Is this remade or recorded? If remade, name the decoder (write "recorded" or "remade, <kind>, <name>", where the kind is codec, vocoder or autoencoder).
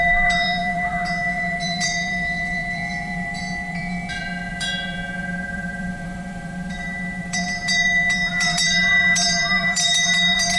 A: remade, vocoder, BigVGAN v2